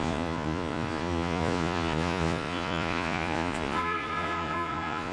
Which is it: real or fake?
fake